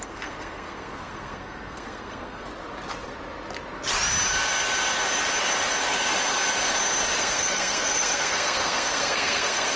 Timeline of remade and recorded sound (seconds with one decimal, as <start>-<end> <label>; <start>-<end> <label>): 0.0-2.5 remade; 2.5-7.2 recorded; 7.2-9.8 remade